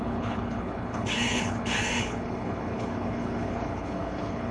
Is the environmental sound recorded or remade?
remade